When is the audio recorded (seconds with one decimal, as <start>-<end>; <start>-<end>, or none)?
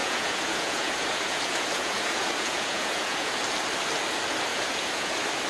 3.3-4.5; 5.1-5.5